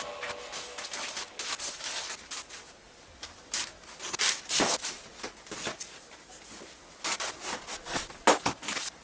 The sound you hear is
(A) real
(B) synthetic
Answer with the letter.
A